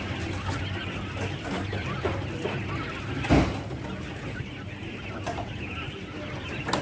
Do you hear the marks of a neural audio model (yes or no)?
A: no